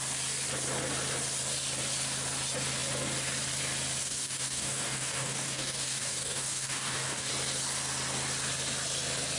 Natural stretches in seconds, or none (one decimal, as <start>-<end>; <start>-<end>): 0.0-4.0; 7.3-9.4